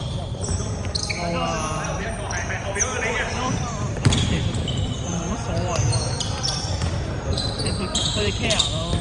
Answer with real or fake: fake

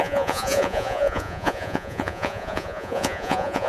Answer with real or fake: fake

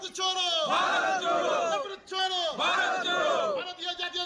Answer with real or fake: real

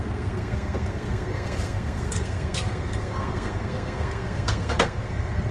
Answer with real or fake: fake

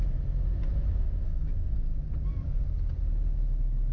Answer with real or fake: real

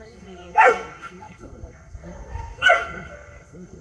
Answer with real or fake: fake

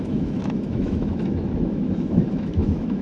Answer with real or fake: fake